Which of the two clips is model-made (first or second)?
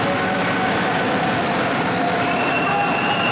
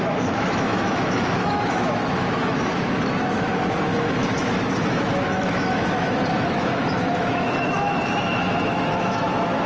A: second